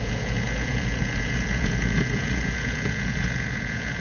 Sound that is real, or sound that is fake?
fake